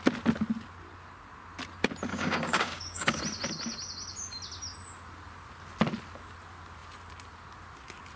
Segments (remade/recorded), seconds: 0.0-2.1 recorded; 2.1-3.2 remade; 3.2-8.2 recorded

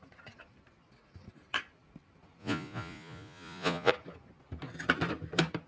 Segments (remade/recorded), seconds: 0.0-2.4 recorded; 2.4-3.9 remade; 3.9-5.7 recorded

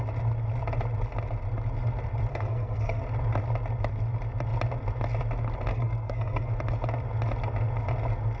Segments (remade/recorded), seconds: 0.0-2.3 recorded; 2.3-3.0 remade; 3.0-5.7 recorded; 5.7-6.5 remade; 6.5-8.4 recorded